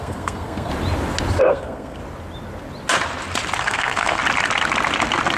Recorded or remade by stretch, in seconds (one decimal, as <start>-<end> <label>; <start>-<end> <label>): 0.0-0.7 remade; 0.7-1.4 recorded; 1.4-2.0 remade; 2.0-3.6 recorded; 3.6-4.2 remade; 4.2-5.4 recorded